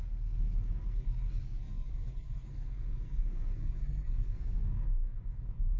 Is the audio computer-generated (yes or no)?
yes